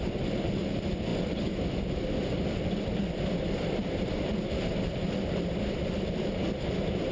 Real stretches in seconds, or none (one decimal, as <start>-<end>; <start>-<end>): 0.0-7.1